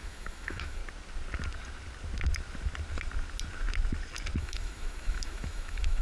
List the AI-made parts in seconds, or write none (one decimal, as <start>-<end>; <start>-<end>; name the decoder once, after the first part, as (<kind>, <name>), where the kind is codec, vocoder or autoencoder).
0.0-0.8 (autoencoder, DAC-VAE); 4.4-6.0